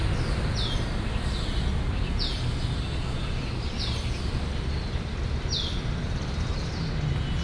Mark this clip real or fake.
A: real